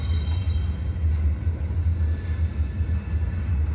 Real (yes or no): yes